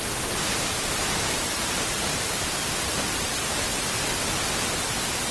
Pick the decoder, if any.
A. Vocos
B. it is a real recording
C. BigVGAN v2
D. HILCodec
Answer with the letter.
C